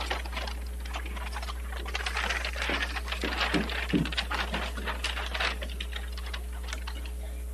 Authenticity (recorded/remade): recorded